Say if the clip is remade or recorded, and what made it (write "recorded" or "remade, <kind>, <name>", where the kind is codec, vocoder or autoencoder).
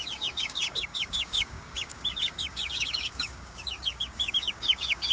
remade, codec, DAC